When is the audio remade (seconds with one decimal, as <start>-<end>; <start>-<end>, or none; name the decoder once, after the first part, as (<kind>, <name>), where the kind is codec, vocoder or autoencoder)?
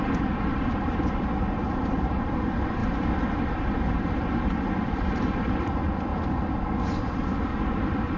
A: 0.0-6.1 (vocoder, BigVGAN v2); 7.0-8.2